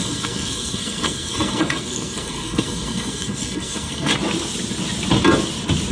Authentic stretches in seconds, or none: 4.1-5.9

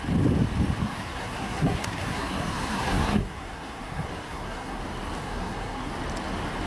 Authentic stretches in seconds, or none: 0.0-0.8; 4.8-5.2; 5.9-6.7

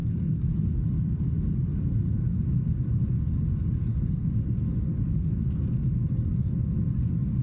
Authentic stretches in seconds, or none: 0.5-7.4

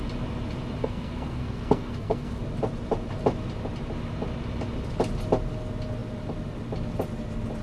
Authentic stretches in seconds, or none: 0.0-0.8; 2.4-7.6

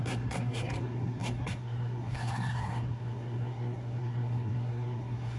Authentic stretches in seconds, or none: none

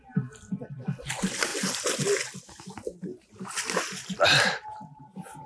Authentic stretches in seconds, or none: 0.0-5.5

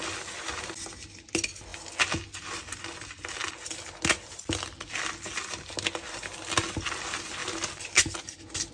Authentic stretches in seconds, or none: 0.0-8.7